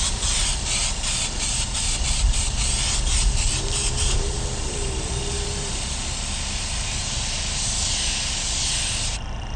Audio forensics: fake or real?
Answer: real